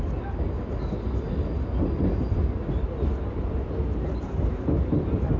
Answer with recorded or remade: recorded